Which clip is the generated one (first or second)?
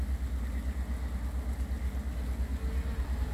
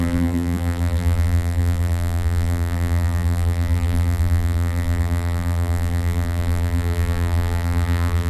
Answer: second